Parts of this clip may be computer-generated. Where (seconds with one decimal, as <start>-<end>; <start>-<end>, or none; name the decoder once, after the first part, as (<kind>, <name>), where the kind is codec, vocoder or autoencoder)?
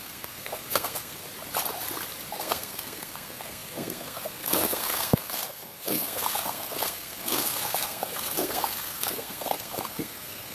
0.0-1.2 (codec, SNAC); 2.3-10.5